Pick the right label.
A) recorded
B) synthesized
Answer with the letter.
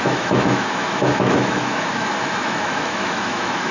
B